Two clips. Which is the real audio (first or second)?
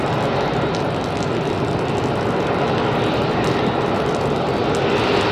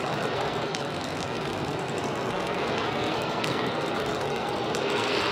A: first